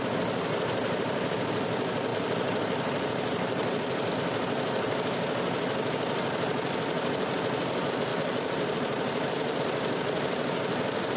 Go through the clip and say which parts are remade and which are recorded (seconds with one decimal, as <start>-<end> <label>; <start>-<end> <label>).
0.0-2.1 recorded; 2.1-4.1 remade; 4.1-8.1 recorded; 8.1-9.6 remade; 9.6-11.2 recorded